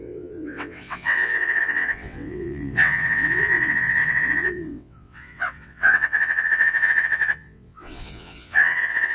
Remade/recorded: remade